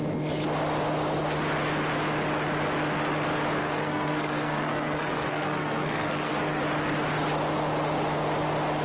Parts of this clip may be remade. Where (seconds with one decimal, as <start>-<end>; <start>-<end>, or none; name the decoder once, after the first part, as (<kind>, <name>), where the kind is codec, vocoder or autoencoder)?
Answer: 3.6-6.6 (codec, SNAC)